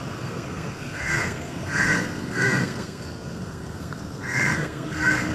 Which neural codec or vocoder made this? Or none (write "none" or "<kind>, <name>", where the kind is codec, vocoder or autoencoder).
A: codec, SNAC